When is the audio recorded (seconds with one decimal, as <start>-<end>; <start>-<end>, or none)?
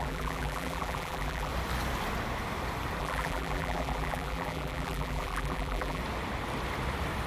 1.5-3.0; 6.0-7.3